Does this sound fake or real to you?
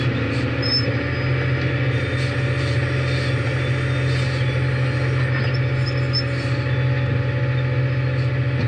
real